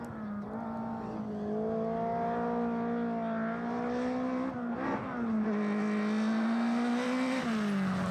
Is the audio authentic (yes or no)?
yes